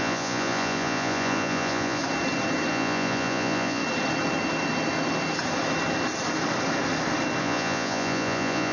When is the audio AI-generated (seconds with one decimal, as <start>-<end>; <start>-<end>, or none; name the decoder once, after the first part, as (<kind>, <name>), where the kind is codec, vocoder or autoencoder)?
0.0-2.0 (vocoder, Vocos); 2.7-3.8; 7.4-8.7